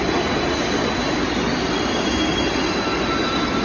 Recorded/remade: recorded